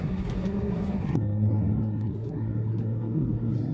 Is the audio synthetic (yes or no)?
yes